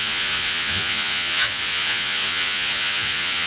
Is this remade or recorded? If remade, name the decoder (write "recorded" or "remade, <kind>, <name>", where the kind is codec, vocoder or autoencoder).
remade, vocoder, Vocos